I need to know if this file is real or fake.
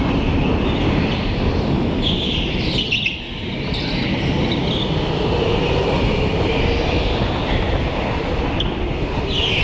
real